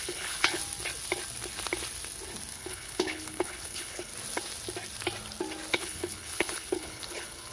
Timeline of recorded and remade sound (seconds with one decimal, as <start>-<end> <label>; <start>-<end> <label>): 0.0-0.6 remade; 0.6-2.5 recorded; 2.5-4.1 remade; 4.1-5.7 recorded; 5.7-7.5 remade